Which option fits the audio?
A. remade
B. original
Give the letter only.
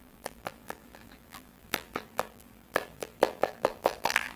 A